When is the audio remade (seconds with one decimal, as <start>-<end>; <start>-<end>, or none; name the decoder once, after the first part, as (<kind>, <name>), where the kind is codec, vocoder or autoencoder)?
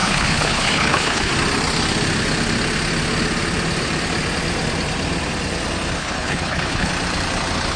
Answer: 0.0-1.3 (codec, HILCodec); 6.0-6.9